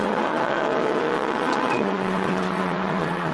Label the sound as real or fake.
fake